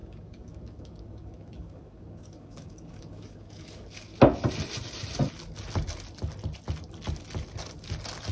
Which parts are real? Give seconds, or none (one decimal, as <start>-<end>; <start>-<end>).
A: 4.1-8.3